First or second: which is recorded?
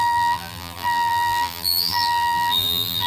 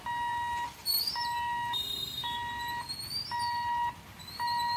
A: second